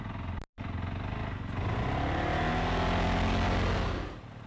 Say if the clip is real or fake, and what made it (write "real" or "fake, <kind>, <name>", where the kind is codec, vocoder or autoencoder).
real